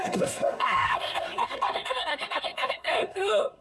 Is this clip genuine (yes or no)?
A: no